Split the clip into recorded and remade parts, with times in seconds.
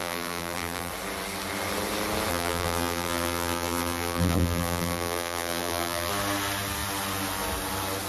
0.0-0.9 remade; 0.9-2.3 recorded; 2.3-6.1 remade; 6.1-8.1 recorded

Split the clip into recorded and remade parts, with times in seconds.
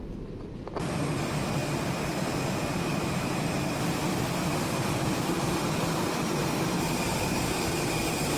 0.0-2.9 recorded; 2.9-5.6 remade; 5.6-8.4 recorded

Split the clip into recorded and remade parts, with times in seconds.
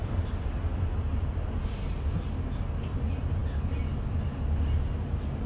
0.0-5.5 recorded